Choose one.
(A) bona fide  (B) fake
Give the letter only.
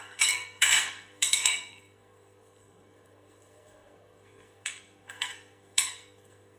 B